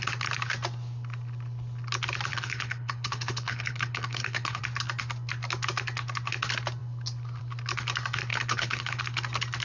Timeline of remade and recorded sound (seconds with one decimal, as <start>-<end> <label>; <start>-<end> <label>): 0.0-2.3 recorded; 2.3-4.6 remade; 4.6-8.3 recorded; 8.3-9.0 remade; 9.0-9.6 recorded

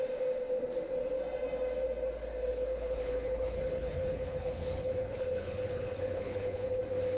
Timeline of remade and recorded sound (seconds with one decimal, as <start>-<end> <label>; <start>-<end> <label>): 0.0-2.5 recorded; 2.5-6.8 remade; 6.8-7.2 recorded

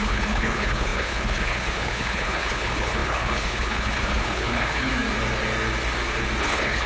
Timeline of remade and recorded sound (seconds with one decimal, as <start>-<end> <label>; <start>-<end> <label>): 0.0-4.9 remade; 4.9-6.4 recorded; 6.4-6.9 remade

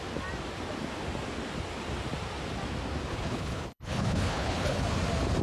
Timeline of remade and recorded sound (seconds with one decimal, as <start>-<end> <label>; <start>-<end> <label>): 0.0-3.1 recorded; 3.1-4.8 remade; 4.8-5.4 recorded